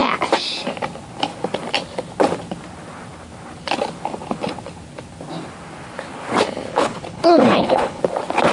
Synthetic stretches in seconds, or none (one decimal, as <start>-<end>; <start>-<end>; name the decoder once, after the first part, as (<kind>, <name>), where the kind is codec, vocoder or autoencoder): 6.7-8.0 (codec, HILCodec)